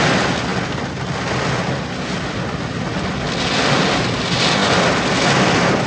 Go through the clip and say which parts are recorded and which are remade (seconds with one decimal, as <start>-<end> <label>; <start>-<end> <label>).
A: 0.0-5.9 recorded